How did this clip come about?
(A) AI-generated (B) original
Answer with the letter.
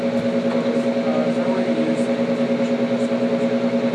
B